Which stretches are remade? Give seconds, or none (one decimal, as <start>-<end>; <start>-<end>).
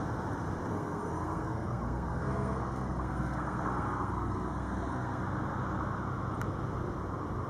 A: 0.7-5.2